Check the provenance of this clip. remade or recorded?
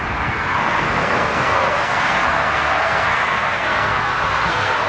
remade